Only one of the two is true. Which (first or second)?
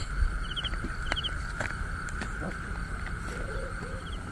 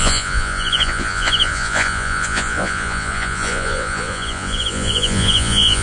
first